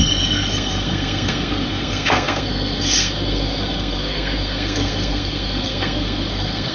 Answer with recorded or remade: remade